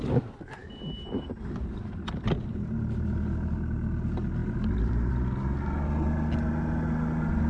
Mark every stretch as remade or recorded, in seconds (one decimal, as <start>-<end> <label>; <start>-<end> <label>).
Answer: 0.0-4.4 recorded; 4.4-5.1 remade; 5.1-7.5 recorded